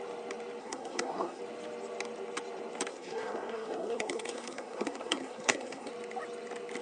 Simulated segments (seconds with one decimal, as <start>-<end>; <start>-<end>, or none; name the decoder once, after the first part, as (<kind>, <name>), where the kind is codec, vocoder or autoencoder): 0.6-1.4 (codec, SNAC); 2.9-5.9